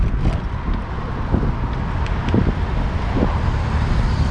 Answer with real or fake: real